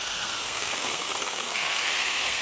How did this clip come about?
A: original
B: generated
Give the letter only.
B